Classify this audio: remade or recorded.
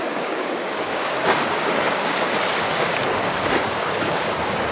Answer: remade